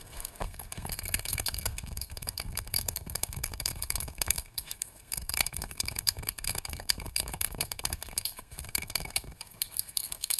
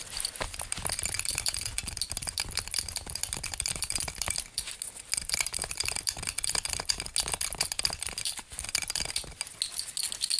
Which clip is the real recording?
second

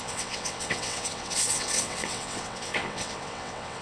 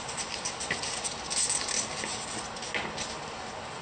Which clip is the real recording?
second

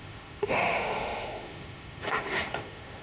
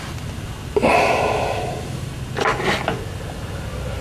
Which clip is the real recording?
second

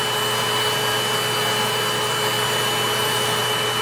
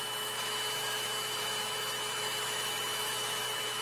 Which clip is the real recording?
first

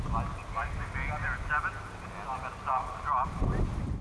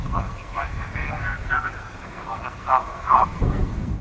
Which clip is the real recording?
first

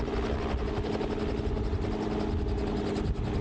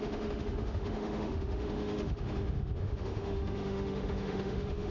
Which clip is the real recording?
first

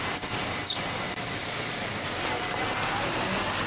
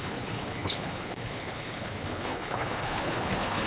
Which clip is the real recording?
first